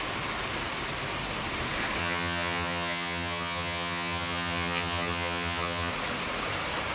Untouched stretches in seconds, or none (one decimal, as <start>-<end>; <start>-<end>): 0.0-2.0; 5.9-6.9